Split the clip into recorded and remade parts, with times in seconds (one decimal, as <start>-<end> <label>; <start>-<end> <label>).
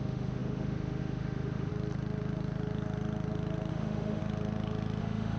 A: 0.0-1.7 remade; 1.7-3.7 recorded; 3.7-4.2 remade; 4.2-5.0 recorded; 5.0-5.4 remade